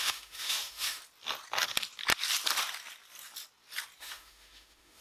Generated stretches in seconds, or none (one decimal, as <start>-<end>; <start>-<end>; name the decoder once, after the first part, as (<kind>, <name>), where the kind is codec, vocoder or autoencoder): 0.0-1.0 (autoencoder, DAC-VAE); 4.0-5.0